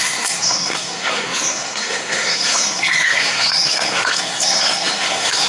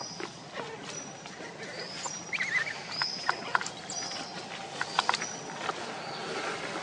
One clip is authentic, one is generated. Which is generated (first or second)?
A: first